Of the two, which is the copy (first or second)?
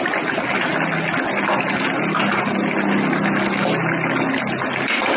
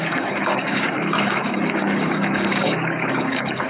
second